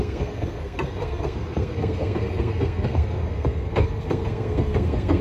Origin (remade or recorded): remade